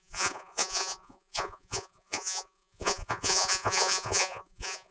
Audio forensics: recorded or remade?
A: remade